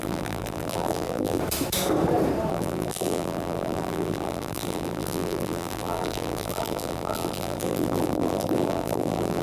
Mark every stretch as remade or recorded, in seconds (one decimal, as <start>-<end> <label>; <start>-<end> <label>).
0.0-1.4 remade; 1.4-2.5 recorded; 2.5-9.4 remade